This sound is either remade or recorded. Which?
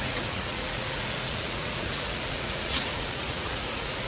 remade